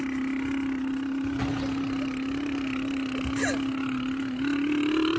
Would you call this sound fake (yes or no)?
no